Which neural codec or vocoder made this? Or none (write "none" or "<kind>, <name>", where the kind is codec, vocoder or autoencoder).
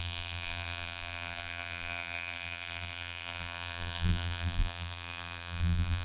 vocoder, BigVGAN v2